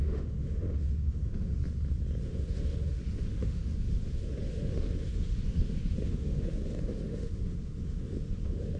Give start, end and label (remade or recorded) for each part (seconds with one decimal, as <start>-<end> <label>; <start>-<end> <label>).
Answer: 0.0-1.6 remade; 1.6-2.2 recorded; 2.2-8.8 remade